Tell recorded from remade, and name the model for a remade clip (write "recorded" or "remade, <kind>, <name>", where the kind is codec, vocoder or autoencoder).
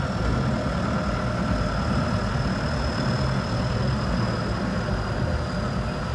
recorded